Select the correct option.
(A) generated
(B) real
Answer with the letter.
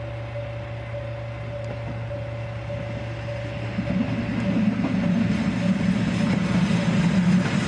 B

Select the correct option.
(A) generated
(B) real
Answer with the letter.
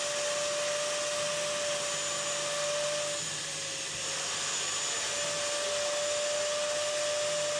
B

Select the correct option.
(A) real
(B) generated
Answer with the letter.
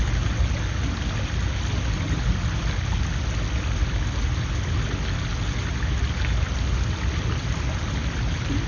A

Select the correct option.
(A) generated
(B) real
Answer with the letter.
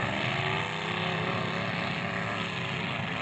B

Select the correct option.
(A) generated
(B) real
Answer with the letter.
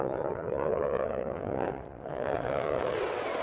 A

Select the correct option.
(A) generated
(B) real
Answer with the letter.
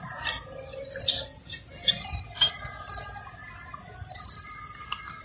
B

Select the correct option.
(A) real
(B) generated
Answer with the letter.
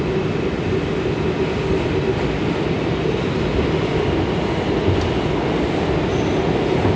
A